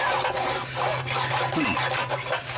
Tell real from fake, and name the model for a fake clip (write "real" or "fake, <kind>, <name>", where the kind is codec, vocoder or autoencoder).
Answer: real